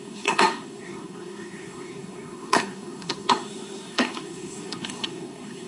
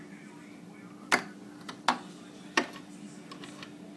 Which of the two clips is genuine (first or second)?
second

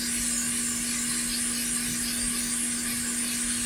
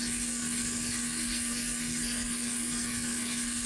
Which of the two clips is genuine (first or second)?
first